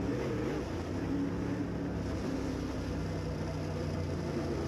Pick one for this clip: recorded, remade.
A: recorded